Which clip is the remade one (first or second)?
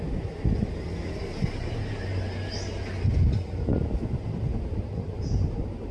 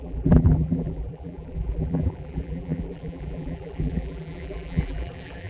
second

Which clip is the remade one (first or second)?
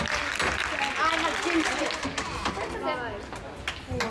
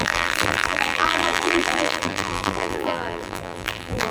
second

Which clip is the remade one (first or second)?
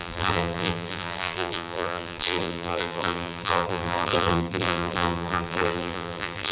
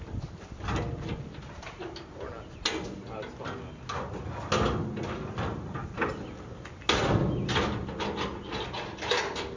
first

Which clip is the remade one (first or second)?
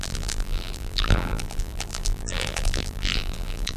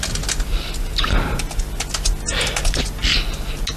first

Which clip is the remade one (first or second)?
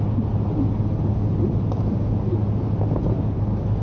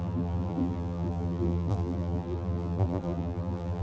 second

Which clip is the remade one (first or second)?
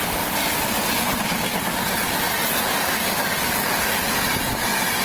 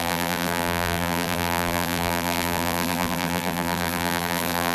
second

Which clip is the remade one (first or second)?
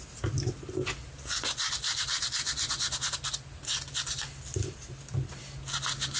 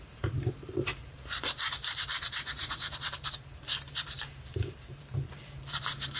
second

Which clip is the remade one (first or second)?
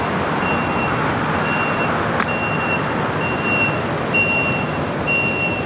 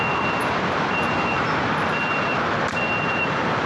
second